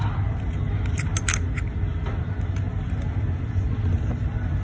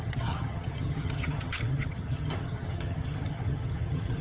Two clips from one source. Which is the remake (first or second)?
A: second